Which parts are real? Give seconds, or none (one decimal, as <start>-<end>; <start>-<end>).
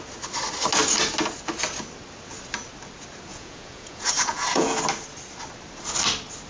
0.0-3.3; 4.8-6.5